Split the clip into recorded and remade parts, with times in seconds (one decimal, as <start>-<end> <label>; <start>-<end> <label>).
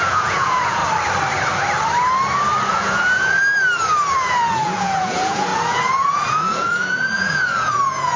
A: 0.0-0.8 remade; 0.8-2.7 recorded; 2.7-3.4 remade; 3.4-4.1 recorded; 4.1-8.2 remade